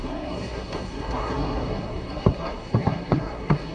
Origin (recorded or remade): remade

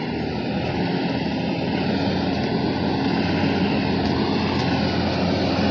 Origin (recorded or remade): recorded